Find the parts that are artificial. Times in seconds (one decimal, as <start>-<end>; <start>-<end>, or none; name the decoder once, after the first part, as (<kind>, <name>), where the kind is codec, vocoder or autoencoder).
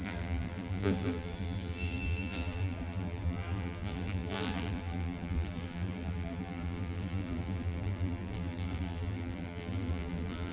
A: 0.0-10.5 (vocoder, BigVGAN v2)